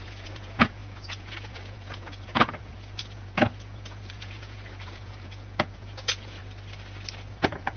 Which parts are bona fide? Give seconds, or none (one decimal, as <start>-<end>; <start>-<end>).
6.4-7.3

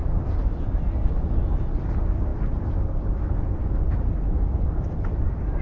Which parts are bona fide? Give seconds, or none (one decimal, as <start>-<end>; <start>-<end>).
1.1-2.3

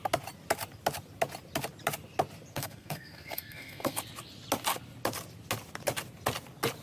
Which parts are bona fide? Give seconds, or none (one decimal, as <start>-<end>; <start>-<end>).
0.0-2.5; 4.0-6.8

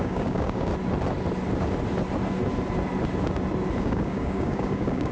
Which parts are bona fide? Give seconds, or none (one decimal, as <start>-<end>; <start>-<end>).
0.7-3.8

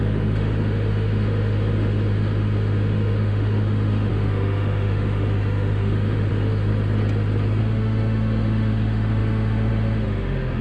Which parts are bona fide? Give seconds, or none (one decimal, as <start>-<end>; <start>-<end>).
6.7-7.6

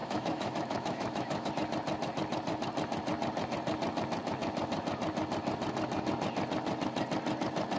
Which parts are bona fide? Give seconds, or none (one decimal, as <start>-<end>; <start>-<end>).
1.5-7.8

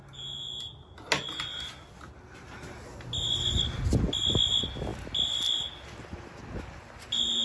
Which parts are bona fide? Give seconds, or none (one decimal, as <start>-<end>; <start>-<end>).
0.0-7.4